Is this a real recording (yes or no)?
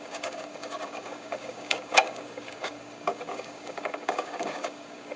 no